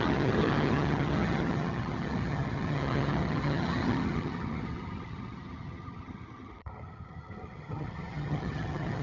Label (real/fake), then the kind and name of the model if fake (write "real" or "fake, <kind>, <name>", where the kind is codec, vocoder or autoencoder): fake, vocoder, HiFi-GAN